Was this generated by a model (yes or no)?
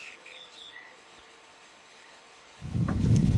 yes